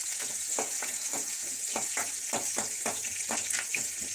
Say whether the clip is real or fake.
fake